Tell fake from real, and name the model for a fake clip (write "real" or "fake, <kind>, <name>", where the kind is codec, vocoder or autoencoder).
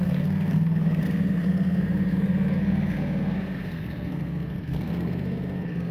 fake, codec, SNAC